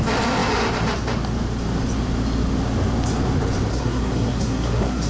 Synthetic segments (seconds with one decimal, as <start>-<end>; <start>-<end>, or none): 3.7-5.1